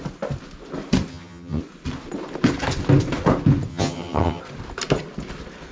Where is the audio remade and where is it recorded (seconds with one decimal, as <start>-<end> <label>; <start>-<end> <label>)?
0.0-1.1 recorded; 1.1-1.6 remade; 1.6-3.7 recorded; 3.7-4.4 remade; 4.4-5.7 recorded